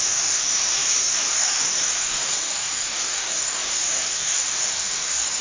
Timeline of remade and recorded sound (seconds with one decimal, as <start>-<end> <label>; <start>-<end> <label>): 0.0-5.4 remade